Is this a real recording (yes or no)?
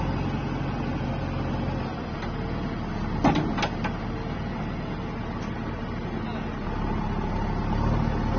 yes